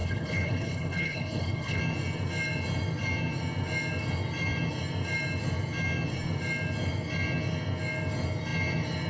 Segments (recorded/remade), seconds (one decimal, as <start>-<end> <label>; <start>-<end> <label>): 0.0-1.8 remade; 1.8-9.1 recorded